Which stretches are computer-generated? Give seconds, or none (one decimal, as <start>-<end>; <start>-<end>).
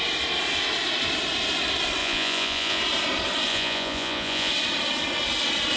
2.0-2.8; 3.5-4.5